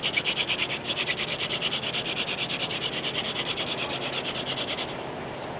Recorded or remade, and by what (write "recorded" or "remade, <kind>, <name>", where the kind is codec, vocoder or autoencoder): recorded